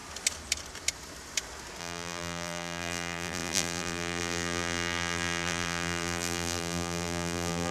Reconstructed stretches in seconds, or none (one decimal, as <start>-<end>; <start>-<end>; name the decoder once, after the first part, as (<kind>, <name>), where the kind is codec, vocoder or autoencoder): 1.8-7.7 (vocoder, BigVGAN v2)